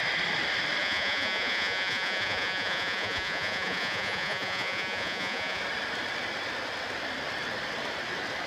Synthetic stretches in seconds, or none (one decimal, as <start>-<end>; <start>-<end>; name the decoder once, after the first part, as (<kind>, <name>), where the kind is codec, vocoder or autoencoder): 0.8-5.6 (vocoder, Vocos)